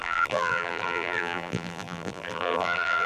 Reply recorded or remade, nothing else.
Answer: remade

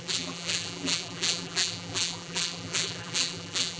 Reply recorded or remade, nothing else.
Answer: remade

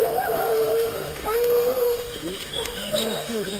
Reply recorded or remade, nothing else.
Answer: remade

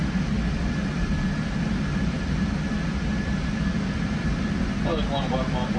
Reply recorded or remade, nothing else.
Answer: recorded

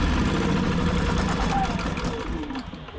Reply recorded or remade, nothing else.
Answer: recorded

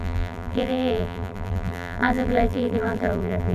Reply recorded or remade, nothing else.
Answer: remade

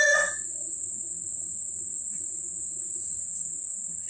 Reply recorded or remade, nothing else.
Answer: remade